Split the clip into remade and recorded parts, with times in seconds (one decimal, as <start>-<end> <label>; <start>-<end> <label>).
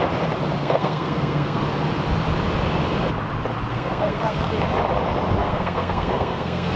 0.0-0.6 recorded; 0.6-1.6 remade; 1.6-3.7 recorded; 3.7-4.5 remade; 4.5-5.4 recorded; 5.4-6.8 remade